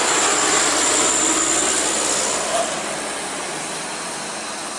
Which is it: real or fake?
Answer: real